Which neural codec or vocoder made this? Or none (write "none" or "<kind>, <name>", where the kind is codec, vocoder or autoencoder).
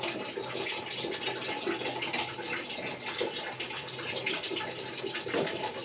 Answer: none